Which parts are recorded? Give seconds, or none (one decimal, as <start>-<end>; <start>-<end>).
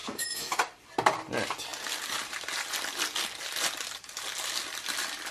0.6-5.3